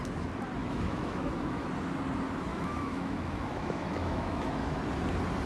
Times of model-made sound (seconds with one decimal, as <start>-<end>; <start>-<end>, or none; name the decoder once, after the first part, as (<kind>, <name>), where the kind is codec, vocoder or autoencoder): 0.6-1.7 (autoencoder, DAC-VAE); 2.5-4.8